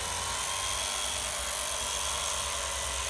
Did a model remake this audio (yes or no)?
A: no